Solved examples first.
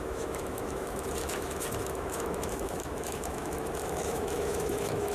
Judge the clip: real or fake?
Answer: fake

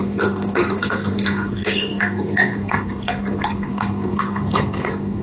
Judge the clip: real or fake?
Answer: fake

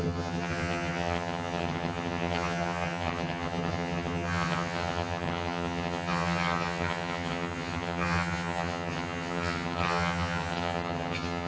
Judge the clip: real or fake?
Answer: fake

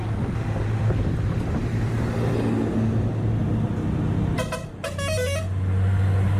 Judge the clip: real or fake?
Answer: real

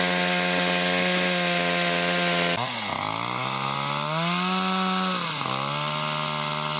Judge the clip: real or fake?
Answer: real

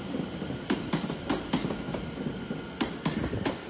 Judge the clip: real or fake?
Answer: real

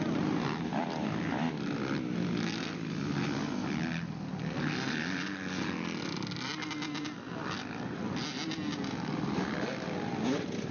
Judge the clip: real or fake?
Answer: real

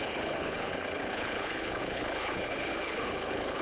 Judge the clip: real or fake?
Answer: fake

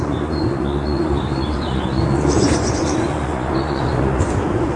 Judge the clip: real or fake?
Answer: fake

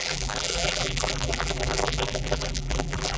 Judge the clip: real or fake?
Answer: fake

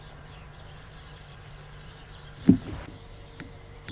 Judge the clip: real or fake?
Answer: fake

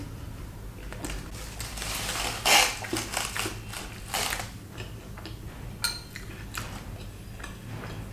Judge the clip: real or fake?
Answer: real